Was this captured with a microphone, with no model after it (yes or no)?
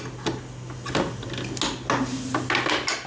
yes